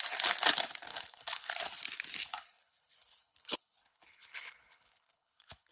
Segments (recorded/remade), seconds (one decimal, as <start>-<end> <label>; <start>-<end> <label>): 0.0-0.9 recorded; 0.9-1.5 remade; 1.5-2.2 recorded; 2.2-5.7 remade